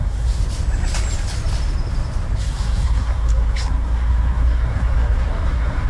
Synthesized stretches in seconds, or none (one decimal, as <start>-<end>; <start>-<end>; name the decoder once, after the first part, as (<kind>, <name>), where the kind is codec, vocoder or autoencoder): 0.0-0.4 (codec, SNAC); 2.4-5.9